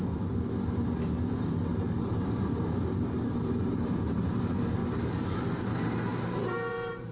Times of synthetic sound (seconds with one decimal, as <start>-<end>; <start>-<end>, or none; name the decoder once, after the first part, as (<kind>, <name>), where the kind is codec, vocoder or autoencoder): 1.7-4.2 (vocoder, BigVGAN v2); 4.8-5.5; 6.1-7.1